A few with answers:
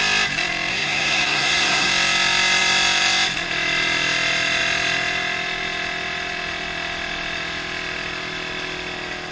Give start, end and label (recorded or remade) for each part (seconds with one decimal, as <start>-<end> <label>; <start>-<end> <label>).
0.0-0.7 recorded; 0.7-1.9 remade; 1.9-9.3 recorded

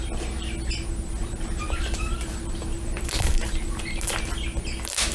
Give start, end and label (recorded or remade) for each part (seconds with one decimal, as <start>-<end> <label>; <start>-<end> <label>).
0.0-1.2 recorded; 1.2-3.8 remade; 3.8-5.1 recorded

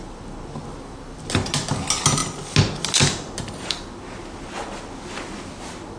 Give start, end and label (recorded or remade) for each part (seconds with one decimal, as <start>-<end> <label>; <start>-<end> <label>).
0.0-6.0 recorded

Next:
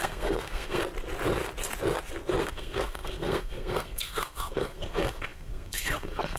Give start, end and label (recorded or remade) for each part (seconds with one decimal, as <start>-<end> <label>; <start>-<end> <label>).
0.0-0.8 remade; 0.8-2.4 recorded; 2.4-6.4 remade

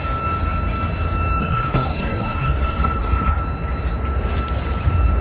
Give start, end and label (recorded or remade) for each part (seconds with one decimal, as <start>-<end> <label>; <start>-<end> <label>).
0.0-1.4 recorded; 1.4-3.4 remade; 3.4-5.2 recorded

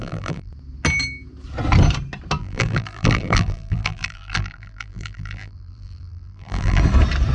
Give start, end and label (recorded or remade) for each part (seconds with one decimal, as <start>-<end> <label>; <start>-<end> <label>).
0.0-0.5 remade; 0.5-2.4 recorded; 2.4-6.8 remade; 6.8-7.3 recorded

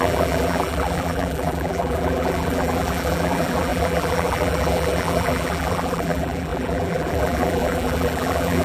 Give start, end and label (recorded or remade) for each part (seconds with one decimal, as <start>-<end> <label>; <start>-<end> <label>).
0.0-8.6 remade

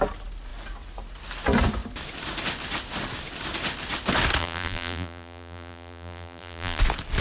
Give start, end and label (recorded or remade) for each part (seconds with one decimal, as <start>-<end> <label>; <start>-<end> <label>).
0.0-4.4 recorded; 4.4-6.8 remade; 6.8-7.2 recorded